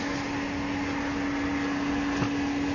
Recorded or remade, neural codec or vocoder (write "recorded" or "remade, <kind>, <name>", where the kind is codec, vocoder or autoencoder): recorded